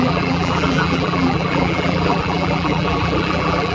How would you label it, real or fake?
fake